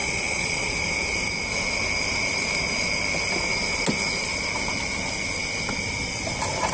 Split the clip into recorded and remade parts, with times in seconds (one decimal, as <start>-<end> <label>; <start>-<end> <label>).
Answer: 0.0-0.7 remade; 0.7-6.7 recorded